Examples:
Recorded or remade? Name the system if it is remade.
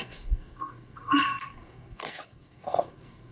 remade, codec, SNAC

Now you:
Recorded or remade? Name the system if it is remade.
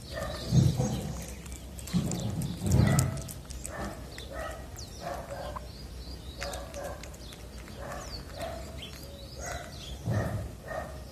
recorded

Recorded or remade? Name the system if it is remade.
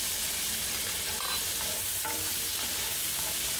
recorded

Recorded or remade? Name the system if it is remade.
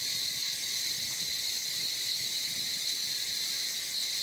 recorded